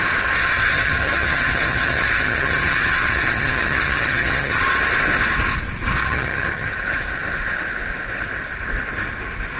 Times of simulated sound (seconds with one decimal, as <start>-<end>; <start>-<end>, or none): 0.4-4.6; 6.0-6.7